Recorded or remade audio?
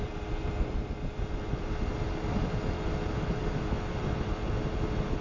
recorded